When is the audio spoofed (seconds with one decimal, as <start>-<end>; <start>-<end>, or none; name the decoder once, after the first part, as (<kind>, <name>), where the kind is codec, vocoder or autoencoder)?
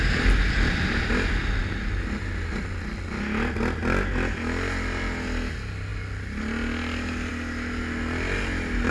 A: none